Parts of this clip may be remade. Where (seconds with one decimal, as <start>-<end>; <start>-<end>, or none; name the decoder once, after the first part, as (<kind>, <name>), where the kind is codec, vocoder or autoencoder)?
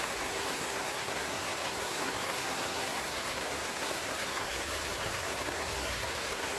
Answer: 0.0-6.6 (codec, SNAC)